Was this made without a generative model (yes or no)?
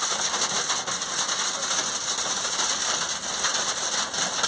yes